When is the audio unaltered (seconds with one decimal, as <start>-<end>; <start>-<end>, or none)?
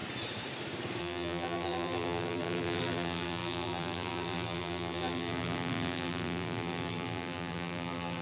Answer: 0.0-1.0